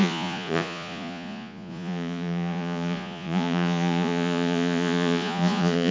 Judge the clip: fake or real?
fake